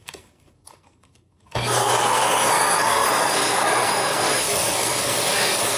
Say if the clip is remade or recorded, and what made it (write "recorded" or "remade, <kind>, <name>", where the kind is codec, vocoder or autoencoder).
remade, codec, SNAC